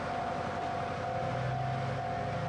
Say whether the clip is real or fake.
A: real